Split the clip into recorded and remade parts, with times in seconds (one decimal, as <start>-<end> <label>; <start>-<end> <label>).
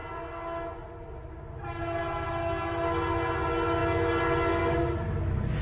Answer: 0.0-5.6 recorded